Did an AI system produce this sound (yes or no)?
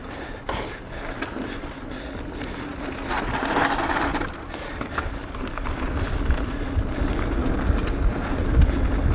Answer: no